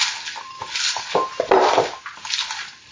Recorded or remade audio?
recorded